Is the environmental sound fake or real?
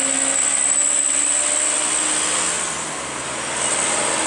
real